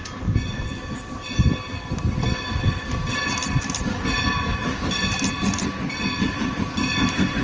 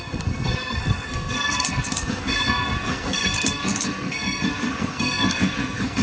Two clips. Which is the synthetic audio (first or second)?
second